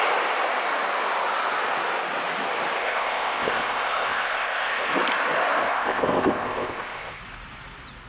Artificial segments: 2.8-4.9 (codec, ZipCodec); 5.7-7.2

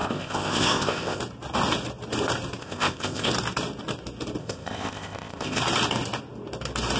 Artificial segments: 0.0-1.2 (codec, ZipCodec); 2.6-3.3; 4.4-5.6

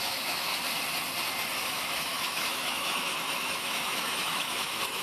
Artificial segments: 0.0-0.5 (autoencoder, DAC-VAE); 1.6-5.0

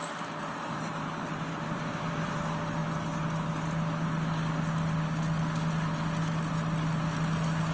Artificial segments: 0.0-2.3 (vocoder, BigVGAN v2)

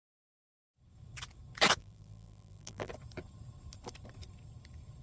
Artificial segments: 1.8-2.9 (vocoder, BigVGAN v2)

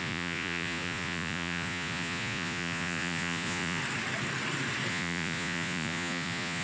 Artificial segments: 0.0-3.8 (vocoder, Vocos); 4.9-6.6